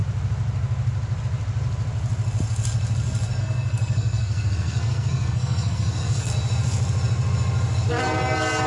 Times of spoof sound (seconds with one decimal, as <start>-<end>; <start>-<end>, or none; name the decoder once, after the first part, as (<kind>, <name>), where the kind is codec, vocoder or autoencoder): 3.4-6.3 (codec, SNAC)